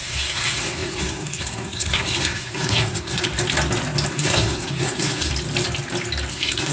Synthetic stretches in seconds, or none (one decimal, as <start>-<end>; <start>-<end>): 0.0-3.3; 4.1-5.3; 6.3-6.7